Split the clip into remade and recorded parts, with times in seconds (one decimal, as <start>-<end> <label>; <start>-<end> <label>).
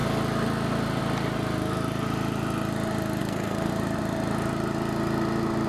0.0-3.2 recorded; 3.2-3.7 remade; 3.7-5.7 recorded